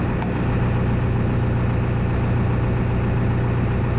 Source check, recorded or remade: recorded